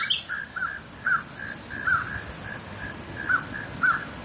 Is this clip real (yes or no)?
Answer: yes